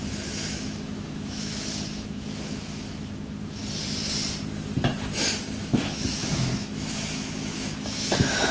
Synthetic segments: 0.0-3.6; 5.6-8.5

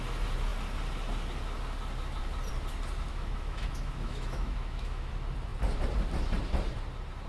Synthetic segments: 3.1-5.1

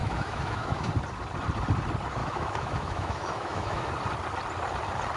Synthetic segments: 0.0-0.9; 2.2-3.9

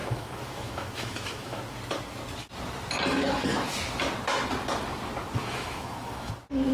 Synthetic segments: 0.0-1.6; 5.4-6.3

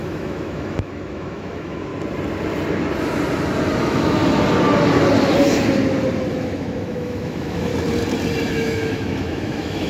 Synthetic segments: 0.0-1.9; 3.8-4.2; 6.3-7.7; 8.5-9.9

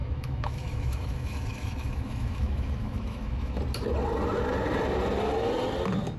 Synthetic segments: 0.0-3.6

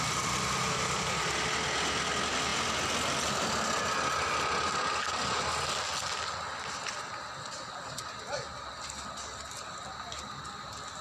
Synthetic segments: none